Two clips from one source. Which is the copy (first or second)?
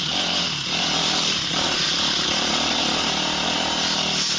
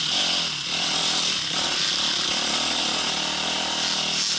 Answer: first